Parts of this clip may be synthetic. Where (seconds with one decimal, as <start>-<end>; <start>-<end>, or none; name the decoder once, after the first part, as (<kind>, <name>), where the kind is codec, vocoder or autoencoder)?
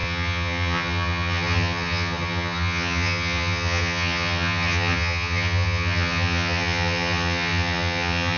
0.0-8.4 (vocoder, HiFi-GAN)